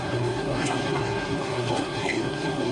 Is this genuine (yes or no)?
no